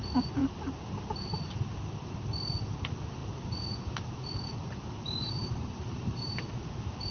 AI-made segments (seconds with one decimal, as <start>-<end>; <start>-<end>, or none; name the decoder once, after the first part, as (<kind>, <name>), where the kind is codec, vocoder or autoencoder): 5.4-6.6 (vocoder, BigVGAN v2)